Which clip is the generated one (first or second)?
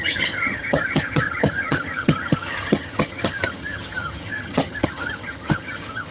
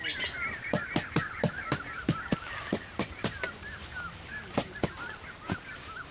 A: first